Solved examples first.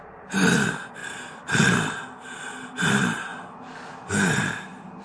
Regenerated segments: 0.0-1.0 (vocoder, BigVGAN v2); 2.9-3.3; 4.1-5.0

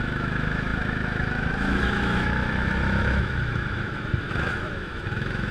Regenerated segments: 0.0-5.5 (autoencoder, DAC-VAE)

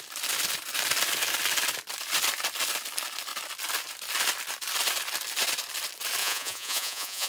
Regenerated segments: 6.2-7.3 (vocoder, Vocos)

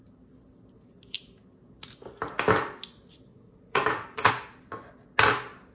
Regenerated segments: 3.3-4.3 (vocoder, Vocos)

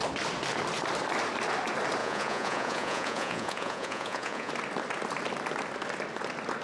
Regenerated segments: 2.0-4.5 (vocoder, Vocos)

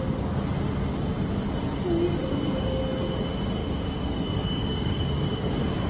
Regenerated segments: 2.2-2.8 (codec, DAC); 3.6-5.9

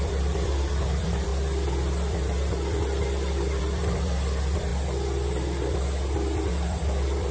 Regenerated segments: 0.0-1.3 (vocoder, BigVGAN v2); 3.6-4.7; 6.5-7.3

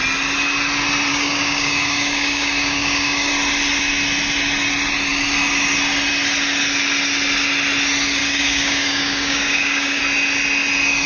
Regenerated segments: 1.1-3.3 (codec, DAC); 8.2-10.0